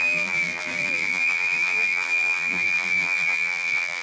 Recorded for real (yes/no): no